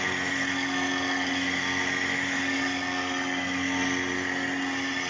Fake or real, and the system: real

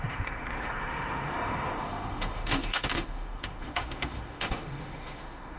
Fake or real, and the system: fake, autoencoder, DAC-VAE